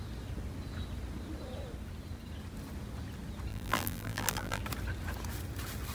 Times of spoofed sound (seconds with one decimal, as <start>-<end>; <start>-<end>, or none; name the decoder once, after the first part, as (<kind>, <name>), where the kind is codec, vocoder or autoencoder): 3.5-4.6 (vocoder, BigVGAN v2)